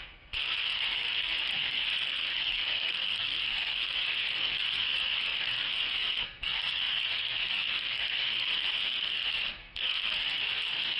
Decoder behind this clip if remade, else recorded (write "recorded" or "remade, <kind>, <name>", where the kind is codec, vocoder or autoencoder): remade, codec, SNAC